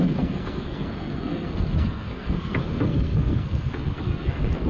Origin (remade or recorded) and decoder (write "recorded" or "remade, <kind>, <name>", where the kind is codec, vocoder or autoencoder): remade, codec, SNAC